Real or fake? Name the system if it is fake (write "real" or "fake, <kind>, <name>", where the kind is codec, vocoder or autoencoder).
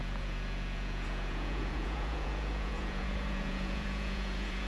fake, vocoder, Vocos